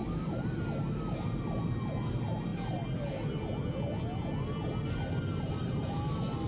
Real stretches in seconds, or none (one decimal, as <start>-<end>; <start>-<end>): 0.0-6.5